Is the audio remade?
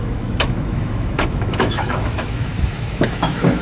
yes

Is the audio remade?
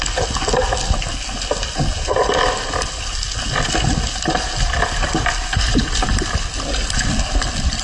no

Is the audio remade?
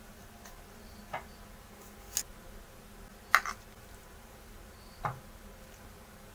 no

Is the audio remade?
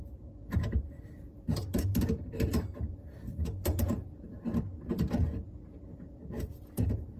yes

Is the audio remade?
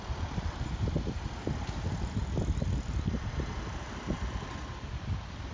no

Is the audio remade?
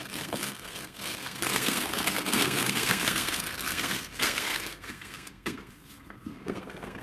yes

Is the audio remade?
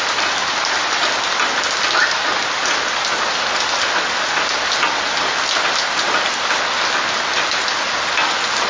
no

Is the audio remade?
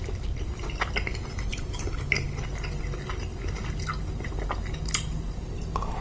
no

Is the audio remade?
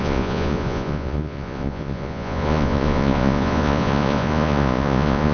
yes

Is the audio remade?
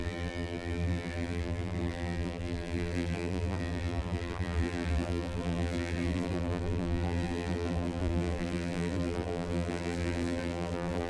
yes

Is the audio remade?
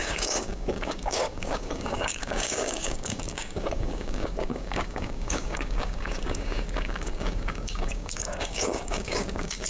yes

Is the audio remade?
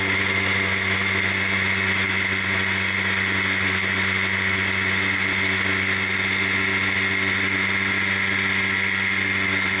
no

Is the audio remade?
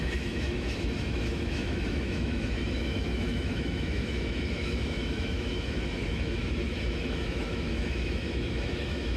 yes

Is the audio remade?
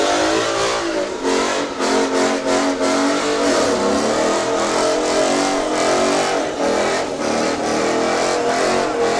no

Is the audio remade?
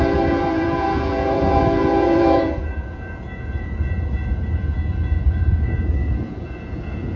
yes